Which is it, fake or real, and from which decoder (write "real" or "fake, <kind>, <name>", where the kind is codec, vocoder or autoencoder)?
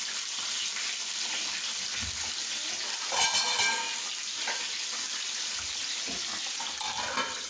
real